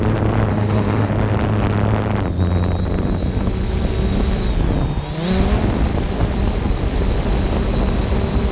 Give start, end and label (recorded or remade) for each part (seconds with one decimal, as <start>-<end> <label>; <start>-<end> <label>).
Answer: 0.0-0.5 recorded; 0.5-1.1 remade; 1.1-8.5 recorded